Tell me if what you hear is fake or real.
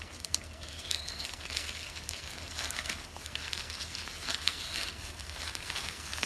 fake